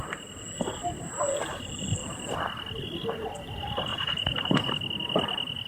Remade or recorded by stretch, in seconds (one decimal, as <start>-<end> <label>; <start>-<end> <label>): 0.0-0.8 recorded; 0.8-1.3 remade; 1.3-3.9 recorded; 3.9-4.7 remade; 4.7-5.7 recorded